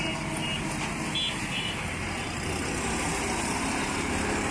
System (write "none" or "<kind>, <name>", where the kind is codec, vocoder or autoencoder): none